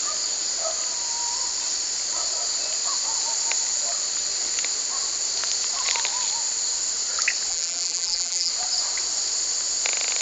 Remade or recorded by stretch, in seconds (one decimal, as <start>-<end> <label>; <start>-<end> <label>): 0.0-7.5 recorded; 7.5-8.5 remade; 8.5-10.2 recorded